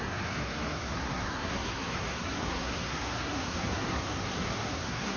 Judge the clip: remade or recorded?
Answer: remade